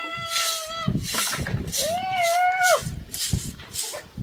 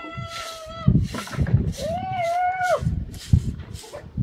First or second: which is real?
first